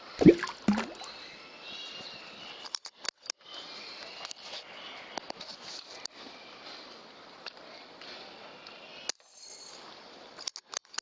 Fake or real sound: real